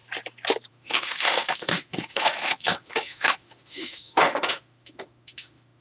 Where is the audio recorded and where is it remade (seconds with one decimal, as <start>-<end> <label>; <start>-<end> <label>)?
0.0-0.7 recorded; 0.7-5.8 remade